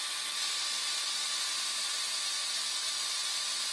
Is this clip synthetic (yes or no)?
no